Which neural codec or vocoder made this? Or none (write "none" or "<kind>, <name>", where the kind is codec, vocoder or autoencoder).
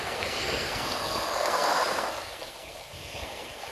codec, SNAC